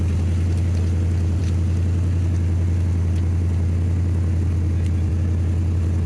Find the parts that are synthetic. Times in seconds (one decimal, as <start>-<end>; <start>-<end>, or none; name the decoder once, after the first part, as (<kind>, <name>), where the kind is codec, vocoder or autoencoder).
none